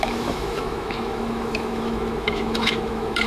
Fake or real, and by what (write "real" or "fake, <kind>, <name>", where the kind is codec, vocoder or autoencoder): fake, autoencoder, DAC-VAE